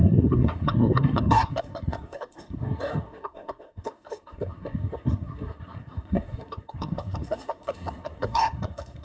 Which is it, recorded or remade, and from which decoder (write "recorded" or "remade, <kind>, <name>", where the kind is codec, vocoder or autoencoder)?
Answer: remade, codec, SNAC